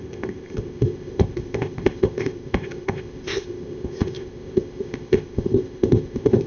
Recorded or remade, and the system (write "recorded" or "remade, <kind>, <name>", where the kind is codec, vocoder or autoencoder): remade, codec, ZipCodec